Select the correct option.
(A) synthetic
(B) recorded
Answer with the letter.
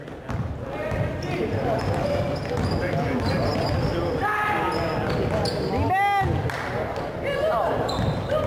B